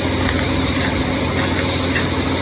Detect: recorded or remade recorded